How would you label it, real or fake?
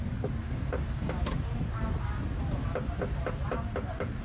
real